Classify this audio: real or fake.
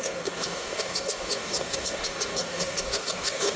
fake